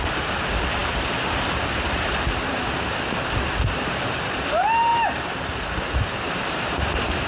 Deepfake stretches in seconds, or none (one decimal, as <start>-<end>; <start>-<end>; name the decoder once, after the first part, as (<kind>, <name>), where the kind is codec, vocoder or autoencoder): none